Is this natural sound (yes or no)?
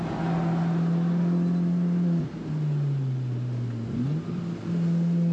yes